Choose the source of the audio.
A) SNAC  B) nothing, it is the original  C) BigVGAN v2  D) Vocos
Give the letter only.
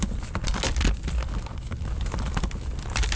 B